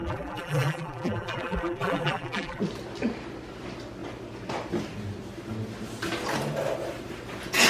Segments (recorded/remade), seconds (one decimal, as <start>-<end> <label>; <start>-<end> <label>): 0.0-2.6 remade; 2.6-7.7 recorded